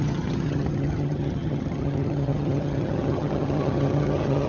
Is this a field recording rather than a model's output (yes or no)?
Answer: no